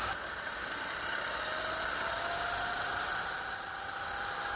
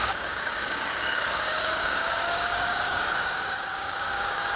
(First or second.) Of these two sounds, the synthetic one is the second